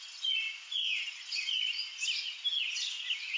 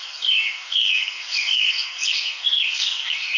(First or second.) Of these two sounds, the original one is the first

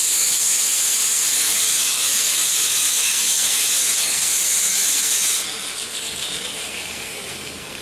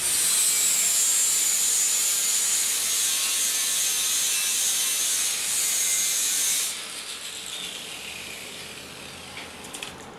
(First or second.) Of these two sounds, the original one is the second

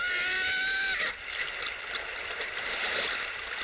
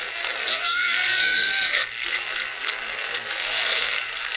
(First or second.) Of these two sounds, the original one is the first